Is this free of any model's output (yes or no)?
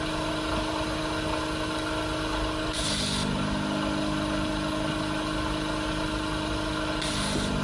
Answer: yes